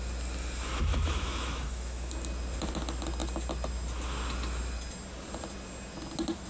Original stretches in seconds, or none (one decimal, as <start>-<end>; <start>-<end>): 0.0-0.9; 2.1-6.5